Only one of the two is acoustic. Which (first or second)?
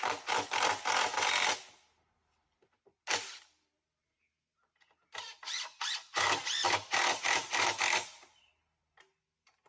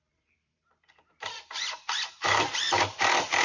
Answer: first